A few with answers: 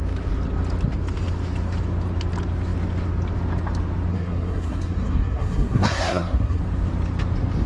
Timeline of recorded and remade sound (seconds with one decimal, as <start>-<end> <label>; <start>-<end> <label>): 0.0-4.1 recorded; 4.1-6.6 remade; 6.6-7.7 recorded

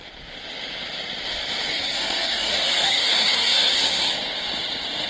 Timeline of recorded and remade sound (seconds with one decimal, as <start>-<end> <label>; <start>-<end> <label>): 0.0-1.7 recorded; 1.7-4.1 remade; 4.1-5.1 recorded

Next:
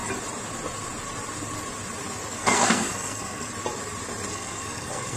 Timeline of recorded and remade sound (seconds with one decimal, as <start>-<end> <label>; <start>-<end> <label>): 0.0-2.3 recorded; 2.3-3.5 remade; 3.5-4.3 recorded; 4.3-5.2 remade

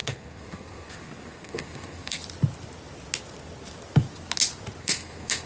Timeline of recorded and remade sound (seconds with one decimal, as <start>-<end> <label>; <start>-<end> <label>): 0.0-2.2 remade; 2.2-4.8 recorded; 4.8-5.5 remade

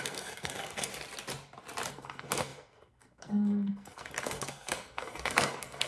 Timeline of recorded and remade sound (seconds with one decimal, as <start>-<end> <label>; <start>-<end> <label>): 0.0-0.9 remade; 0.9-1.9 recorded; 1.9-5.9 remade